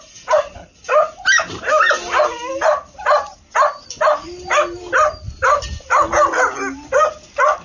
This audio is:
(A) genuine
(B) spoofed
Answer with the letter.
A